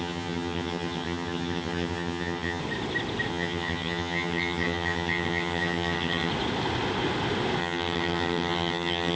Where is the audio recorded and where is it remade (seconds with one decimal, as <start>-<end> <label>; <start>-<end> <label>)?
0.0-2.6 remade; 2.6-3.3 recorded; 3.3-6.3 remade; 6.3-7.6 recorded; 7.6-9.2 remade